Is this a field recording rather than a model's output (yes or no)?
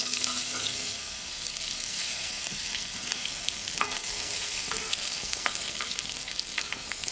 no